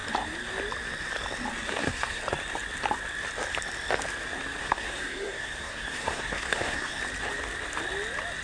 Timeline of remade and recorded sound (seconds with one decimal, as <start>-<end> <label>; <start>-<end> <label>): 0.0-1.7 recorded; 1.7-2.2 remade; 2.2-4.6 recorded; 4.6-7.0 remade; 7.0-8.4 recorded